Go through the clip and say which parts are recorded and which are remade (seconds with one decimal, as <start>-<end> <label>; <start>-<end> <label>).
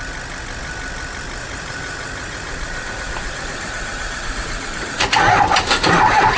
0.0-1.4 recorded; 1.4-5.2 remade; 5.2-6.4 recorded